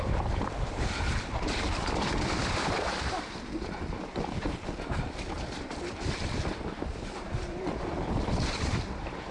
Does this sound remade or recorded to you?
remade